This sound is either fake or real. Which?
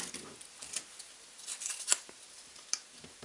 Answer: real